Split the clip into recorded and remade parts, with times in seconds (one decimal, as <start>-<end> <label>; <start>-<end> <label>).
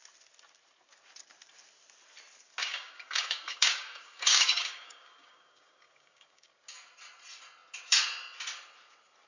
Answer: 0.0-2.6 recorded; 2.6-6.5 remade; 6.5-9.3 recorded